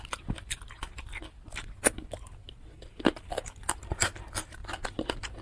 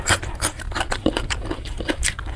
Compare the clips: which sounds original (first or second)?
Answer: first